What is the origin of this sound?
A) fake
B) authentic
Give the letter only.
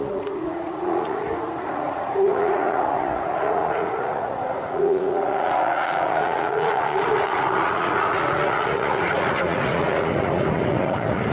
A